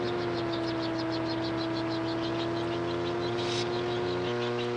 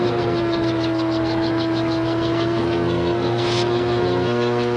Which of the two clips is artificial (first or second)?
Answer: second